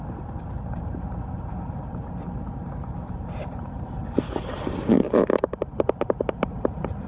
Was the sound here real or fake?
fake